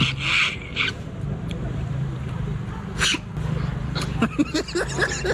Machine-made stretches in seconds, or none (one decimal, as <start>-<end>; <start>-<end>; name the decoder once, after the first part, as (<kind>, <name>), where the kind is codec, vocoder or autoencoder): 0.5-2.8 (vocoder, BigVGAN v2)